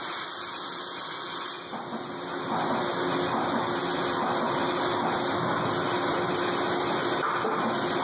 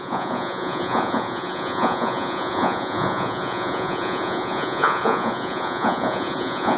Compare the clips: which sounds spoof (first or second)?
second